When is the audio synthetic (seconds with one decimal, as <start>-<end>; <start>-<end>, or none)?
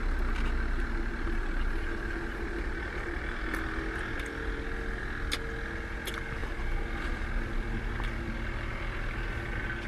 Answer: 6.4-8.0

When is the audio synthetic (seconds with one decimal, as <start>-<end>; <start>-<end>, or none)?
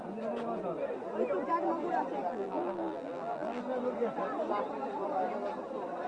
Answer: 2.3-3.6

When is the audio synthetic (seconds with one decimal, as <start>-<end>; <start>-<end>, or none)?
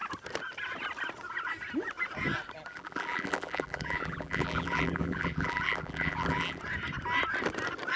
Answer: 2.7-6.6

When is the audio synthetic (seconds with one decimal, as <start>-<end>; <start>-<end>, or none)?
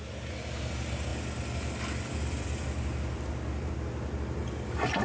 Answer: 1.1-3.7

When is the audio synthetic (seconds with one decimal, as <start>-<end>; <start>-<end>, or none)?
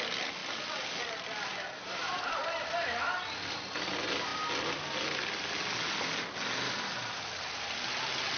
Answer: 1.5-2.4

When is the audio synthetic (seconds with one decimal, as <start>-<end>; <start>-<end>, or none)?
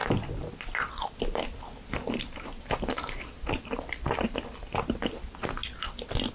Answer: none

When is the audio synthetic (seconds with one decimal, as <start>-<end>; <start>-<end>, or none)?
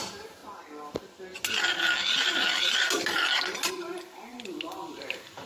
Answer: 0.0-0.4; 3.7-4.3; 4.9-5.5